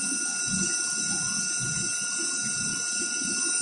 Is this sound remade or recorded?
recorded